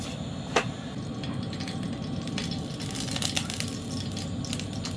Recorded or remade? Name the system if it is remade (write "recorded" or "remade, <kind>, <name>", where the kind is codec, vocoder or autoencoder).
recorded